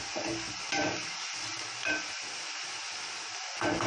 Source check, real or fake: real